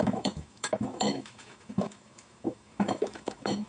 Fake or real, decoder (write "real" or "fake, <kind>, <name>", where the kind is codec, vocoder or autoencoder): fake, autoencoder, DAC-VAE